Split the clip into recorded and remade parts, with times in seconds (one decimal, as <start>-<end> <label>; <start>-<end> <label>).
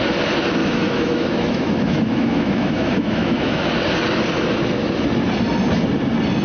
0.0-0.6 recorded; 0.6-3.6 remade; 3.6-6.4 recorded